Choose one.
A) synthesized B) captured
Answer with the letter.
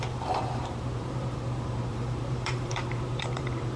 A